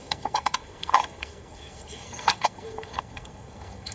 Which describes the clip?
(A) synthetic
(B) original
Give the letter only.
A